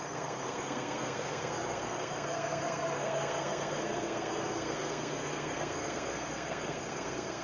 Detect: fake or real fake